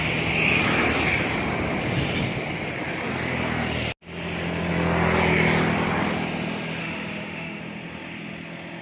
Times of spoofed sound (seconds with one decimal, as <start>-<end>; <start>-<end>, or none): 6.8-7.6